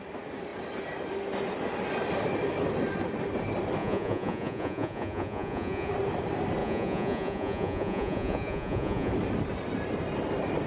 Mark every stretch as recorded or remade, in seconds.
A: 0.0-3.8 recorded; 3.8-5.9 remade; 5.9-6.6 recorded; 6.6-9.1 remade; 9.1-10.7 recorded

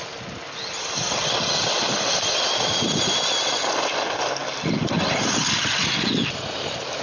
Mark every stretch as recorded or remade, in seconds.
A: 0.0-7.0 recorded

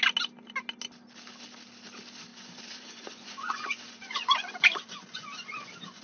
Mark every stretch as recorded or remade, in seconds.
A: 0.0-2.3 recorded; 2.3-6.0 remade

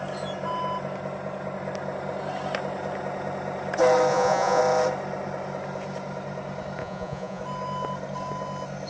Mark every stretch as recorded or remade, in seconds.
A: 0.0-4.1 recorded; 4.1-4.6 remade; 4.6-6.8 recorded; 6.8-7.4 remade; 7.4-8.9 recorded

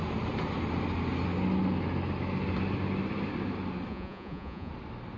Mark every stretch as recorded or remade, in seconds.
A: 0.0-3.9 recorded; 3.9-4.7 remade; 4.7-5.2 recorded

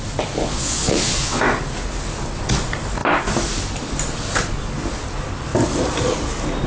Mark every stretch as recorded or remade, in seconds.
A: 0.0-0.4 recorded; 0.4-1.4 remade; 1.4-6.7 recorded